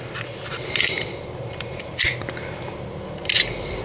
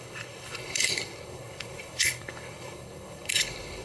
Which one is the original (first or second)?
first